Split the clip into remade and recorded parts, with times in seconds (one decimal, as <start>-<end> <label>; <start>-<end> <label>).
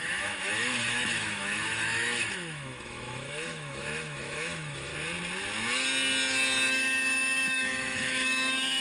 0.0-4.9 remade; 4.9-6.7 recorded; 6.7-8.8 remade